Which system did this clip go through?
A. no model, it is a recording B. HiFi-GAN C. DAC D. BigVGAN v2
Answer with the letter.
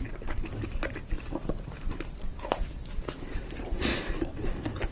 D